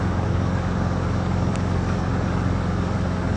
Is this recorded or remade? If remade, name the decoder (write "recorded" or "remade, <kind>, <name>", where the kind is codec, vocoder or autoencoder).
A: remade, codec, DAC